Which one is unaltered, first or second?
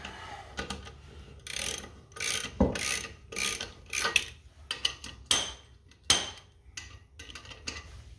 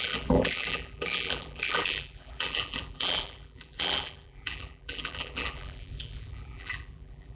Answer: first